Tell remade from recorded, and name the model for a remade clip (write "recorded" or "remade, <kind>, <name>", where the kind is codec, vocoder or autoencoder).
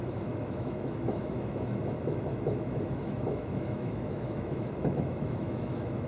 remade, autoencoder, DAC-VAE